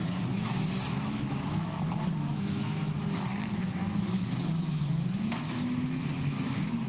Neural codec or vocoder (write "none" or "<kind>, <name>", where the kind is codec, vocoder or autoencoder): autoencoder, DAC-VAE